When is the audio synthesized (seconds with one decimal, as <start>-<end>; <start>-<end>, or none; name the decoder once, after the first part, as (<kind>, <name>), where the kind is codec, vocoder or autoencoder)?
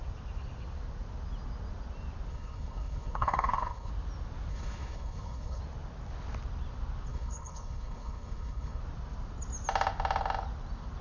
2.3-3.9 (codec, HILCodec); 4.5-5.6; 7.1-8.8